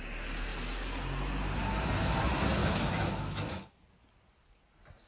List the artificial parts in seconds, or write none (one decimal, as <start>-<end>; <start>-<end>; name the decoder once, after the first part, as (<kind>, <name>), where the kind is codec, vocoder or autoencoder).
2.6-3.6 (autoencoder, DAC-VAE)